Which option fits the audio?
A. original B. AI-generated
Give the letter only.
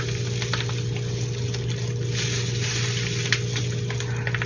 A